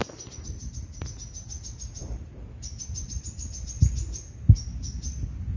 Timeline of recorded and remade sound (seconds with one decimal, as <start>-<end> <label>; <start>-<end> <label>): 0.0-5.6 recorded